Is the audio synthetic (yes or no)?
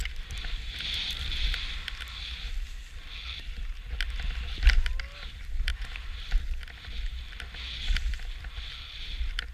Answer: no